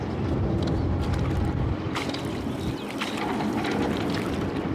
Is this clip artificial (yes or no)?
no